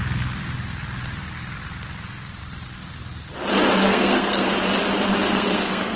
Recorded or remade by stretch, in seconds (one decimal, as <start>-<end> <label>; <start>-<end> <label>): 0.0-3.8 recorded; 3.8-4.5 remade; 4.5-5.3 recorded; 5.3-6.0 remade